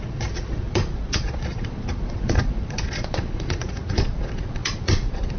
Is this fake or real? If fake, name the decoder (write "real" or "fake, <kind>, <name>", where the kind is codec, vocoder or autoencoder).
fake, vocoder, Vocos